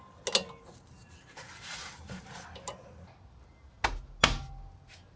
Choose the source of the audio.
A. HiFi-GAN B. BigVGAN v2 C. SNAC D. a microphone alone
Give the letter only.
D